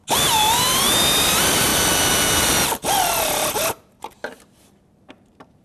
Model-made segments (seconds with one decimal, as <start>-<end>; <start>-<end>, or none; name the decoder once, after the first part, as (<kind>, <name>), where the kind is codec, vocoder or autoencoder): 0.0-1.7 (vocoder, BigVGAN v2); 5.1-5.6